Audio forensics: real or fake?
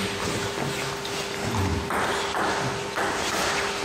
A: real